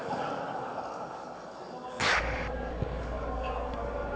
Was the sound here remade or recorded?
remade